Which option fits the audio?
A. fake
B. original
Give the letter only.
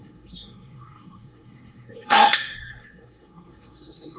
A